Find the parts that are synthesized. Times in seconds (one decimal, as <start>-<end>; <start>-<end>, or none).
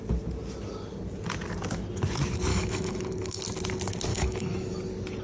2.5-3.4; 4.1-4.8